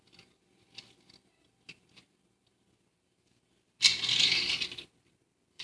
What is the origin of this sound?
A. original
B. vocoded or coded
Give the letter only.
A